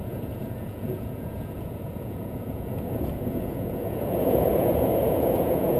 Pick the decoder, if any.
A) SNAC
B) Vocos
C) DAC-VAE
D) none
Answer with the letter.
B